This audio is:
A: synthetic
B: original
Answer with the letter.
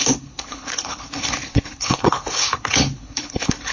A